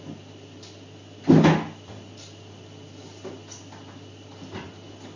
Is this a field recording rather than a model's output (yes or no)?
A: yes